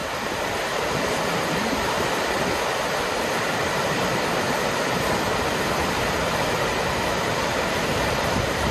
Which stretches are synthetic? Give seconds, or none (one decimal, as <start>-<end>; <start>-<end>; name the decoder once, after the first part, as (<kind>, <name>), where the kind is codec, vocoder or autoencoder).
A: 3.4-8.7 (vocoder, BigVGAN v2)